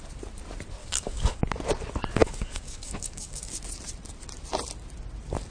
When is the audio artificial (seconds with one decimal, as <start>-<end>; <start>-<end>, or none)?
0.8-1.4; 2.2-3.5